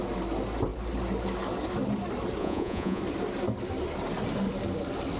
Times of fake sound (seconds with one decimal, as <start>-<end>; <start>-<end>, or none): 2.4-3.0